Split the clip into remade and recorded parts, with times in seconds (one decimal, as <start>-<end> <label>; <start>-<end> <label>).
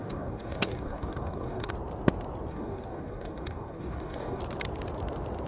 0.0-1.7 remade; 1.7-2.5 recorded; 2.5-4.4 remade; 4.4-5.5 recorded